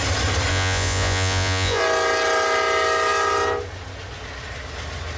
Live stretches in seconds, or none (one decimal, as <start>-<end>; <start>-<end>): 0.0-0.5; 1.8-5.2